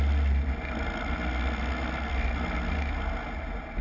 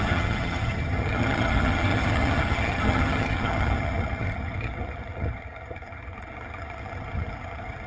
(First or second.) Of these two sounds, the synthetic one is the second